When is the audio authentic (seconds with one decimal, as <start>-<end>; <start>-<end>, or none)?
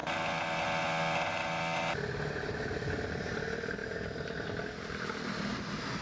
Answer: 0.0-6.0